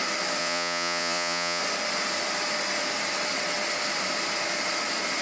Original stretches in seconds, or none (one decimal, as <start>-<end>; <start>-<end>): 0.0-0.4; 1.6-5.2